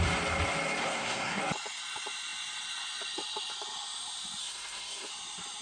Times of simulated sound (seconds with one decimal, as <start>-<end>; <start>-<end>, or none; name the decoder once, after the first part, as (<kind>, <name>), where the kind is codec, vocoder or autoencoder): 0.8-1.4 (codec, SNAC); 4.4-5.1